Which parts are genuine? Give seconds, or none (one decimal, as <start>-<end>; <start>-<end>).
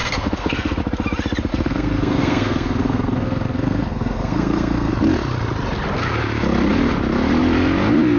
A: 0.8-1.5; 4.9-8.2